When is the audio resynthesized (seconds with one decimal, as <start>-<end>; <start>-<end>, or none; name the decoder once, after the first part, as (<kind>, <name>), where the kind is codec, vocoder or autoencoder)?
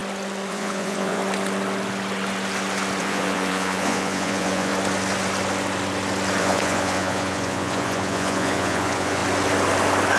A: 0.5-1.2 (vocoder, Vocos); 3.0-4.7; 6.4-9.2